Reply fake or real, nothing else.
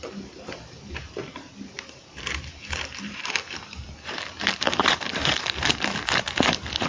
fake